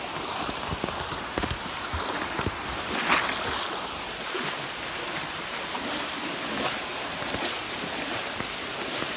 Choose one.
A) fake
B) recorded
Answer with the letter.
B